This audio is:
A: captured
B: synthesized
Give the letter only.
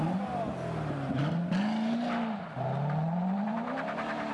A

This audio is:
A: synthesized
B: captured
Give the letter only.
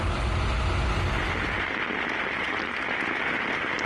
B